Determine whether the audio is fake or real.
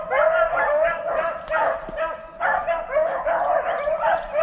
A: real